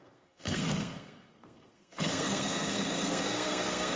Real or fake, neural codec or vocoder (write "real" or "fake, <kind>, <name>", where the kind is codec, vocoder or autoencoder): fake, codec, SNAC